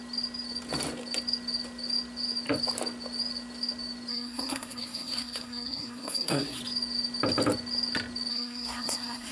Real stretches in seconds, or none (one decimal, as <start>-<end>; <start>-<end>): 0.0-4.1; 6.6-8.3

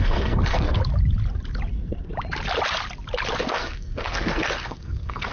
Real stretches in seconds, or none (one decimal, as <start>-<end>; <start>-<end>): 0.8-1.7; 2.1-3.4

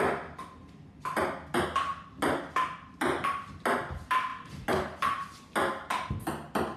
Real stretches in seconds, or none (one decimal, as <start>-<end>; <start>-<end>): 0.0-6.8